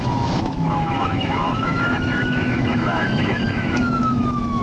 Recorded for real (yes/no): no